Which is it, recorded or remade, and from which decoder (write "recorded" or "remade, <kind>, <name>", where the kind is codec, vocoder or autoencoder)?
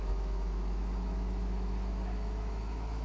remade, autoencoder, DAC-VAE